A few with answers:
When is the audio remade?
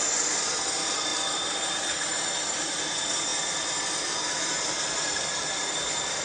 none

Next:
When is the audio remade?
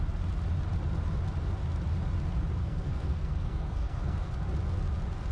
2.6-4.3 (codec, SNAC)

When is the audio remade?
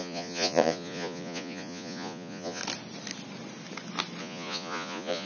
0.0-2.6 (vocoder, Vocos); 4.2-5.3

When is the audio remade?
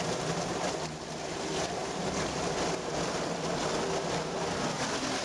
none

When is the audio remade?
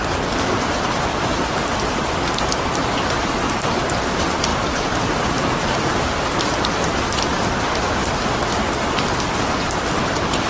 1.3-2.0 (vocoder, BigVGAN v2); 4.5-5.4